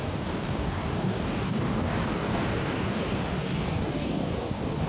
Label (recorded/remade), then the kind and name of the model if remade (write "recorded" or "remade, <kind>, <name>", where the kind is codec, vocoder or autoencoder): remade, codec, DAC